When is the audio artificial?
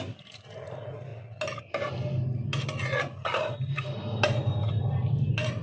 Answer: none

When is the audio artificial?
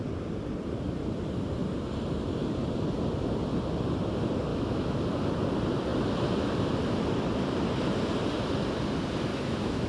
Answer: 4.5-5.0 (autoencoder, DAC-VAE); 9.3-9.9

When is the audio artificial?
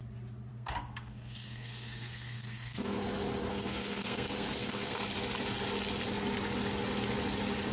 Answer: 0.5-3.0 (codec, SNAC); 3.5-5.0